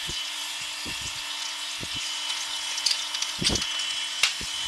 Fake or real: fake